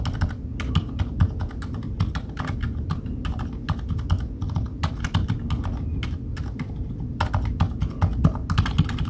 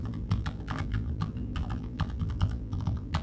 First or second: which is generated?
second